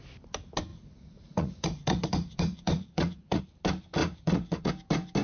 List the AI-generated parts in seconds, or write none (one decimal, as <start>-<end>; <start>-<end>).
0.7-3.4; 4.0-4.7